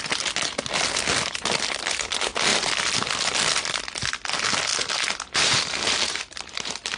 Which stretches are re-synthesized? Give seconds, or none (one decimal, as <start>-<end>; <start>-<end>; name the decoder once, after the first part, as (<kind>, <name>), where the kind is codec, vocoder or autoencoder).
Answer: 2.5-3.8 (vocoder, BigVGAN v2)